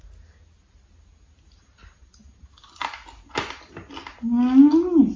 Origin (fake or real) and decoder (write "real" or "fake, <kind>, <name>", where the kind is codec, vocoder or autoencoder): real